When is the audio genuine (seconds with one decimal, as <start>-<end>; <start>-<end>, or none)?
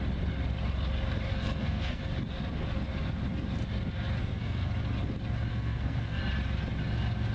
0.0-1.3; 2.0-4.2; 4.7-5.5; 6.2-7.3